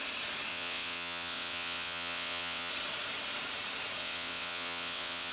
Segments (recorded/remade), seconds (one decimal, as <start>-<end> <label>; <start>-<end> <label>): 0.0-0.5 recorded; 0.5-2.7 remade; 2.7-4.0 recorded; 4.0-5.3 remade

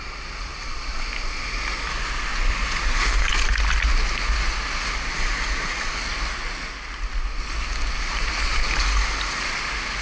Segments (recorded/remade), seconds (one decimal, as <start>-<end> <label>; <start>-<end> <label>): 0.0-10.0 recorded

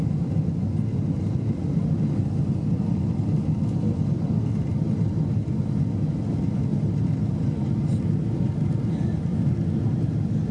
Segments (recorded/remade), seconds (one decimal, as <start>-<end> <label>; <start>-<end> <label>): 0.0-10.5 remade

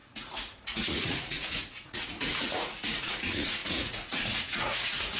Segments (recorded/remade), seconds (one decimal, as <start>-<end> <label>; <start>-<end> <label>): 0.0-5.2 remade

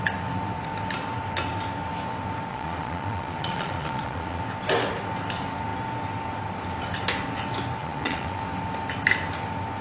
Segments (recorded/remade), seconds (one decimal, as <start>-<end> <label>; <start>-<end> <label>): 0.0-2.5 recorded; 2.5-4.4 remade; 4.4-7.8 recorded; 7.8-8.4 remade; 8.4-9.8 recorded

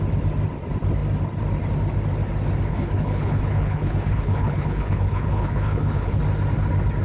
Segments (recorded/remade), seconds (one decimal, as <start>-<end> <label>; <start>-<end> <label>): 0.0-2.7 recorded; 2.7-6.2 remade; 6.2-7.0 recorded